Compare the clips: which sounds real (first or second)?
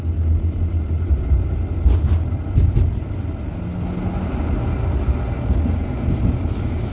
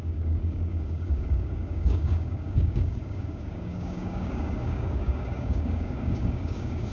first